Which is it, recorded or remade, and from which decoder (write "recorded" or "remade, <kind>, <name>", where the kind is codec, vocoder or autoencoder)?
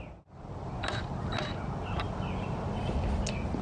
recorded